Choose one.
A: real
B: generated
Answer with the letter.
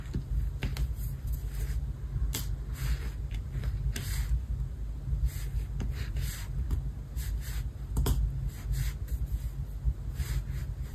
A